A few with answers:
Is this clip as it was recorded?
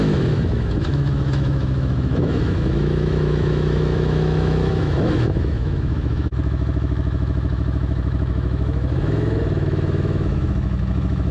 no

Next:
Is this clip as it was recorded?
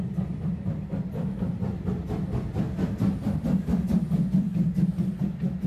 yes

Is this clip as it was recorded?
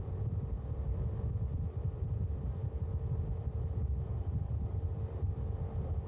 no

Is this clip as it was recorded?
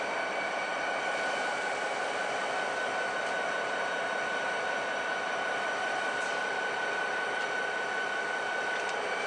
yes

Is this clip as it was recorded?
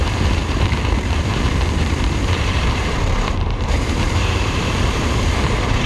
no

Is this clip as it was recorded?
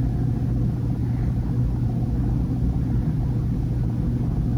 yes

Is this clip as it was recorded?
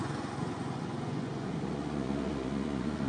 no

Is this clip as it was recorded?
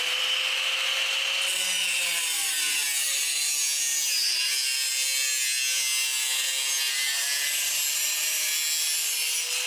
yes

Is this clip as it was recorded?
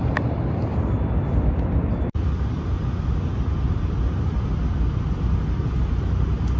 yes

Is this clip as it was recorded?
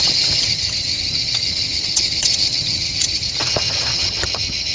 no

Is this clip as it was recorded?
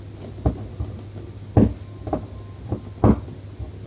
yes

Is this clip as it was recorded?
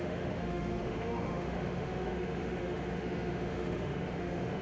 no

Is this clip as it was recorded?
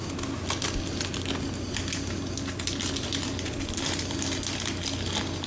yes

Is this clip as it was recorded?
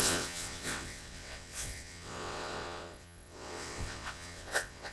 no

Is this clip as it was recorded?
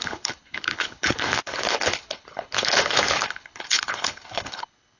no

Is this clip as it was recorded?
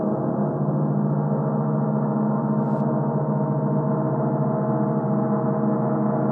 yes